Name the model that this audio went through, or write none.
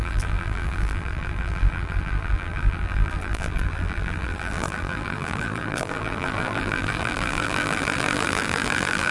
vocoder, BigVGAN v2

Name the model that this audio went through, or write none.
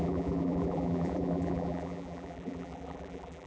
vocoder, BigVGAN v2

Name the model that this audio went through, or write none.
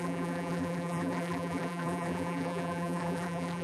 vocoder, BigVGAN v2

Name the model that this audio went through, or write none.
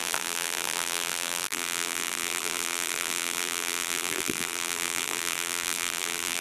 vocoder, BigVGAN v2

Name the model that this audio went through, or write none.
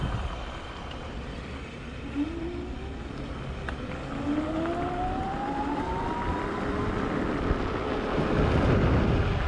none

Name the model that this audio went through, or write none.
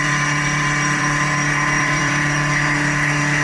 vocoder, BigVGAN v2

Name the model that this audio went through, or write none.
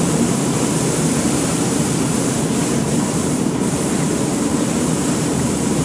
vocoder, BigVGAN v2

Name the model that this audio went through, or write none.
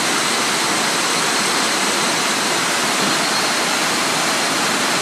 none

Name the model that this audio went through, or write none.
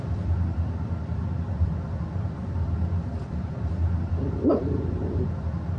vocoder, BigVGAN v2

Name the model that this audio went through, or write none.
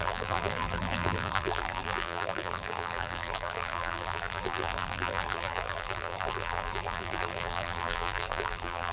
vocoder, BigVGAN v2